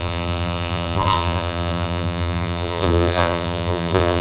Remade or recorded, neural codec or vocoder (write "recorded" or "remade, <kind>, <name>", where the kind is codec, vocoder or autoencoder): remade, vocoder, BigVGAN v2